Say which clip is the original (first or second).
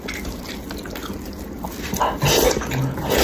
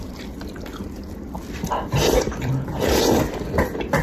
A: first